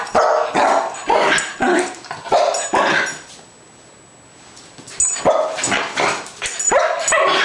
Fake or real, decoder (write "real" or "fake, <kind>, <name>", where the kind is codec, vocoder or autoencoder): real